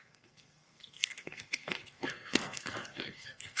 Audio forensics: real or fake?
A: fake